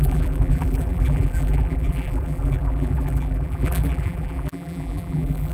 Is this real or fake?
fake